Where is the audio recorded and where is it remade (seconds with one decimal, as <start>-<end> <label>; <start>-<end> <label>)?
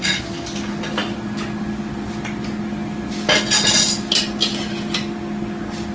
0.0-5.9 recorded